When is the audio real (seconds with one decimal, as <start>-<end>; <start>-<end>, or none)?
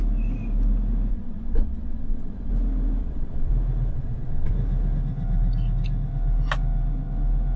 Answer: 0.0-1.1; 2.5-3.0; 3.5-3.9; 4.5-7.6